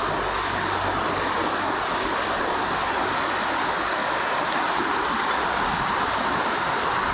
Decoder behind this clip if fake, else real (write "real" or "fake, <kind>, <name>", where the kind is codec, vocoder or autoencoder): real